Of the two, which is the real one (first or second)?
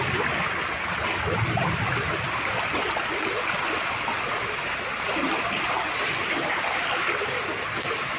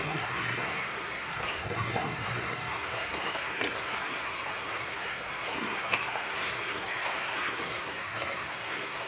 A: first